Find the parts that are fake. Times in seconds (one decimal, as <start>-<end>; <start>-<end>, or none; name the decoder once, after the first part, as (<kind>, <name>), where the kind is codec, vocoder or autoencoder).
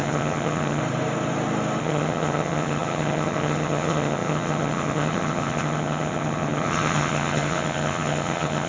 0.0-0.8 (vocoder, HiFi-GAN); 1.8-8.7